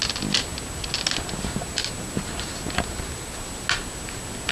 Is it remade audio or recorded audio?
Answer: recorded